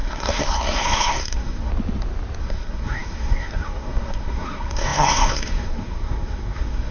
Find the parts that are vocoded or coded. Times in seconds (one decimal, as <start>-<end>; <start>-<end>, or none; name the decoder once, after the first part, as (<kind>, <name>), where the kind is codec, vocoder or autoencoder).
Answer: 0.0-1.7 (codec, SNAC); 2.4-6.9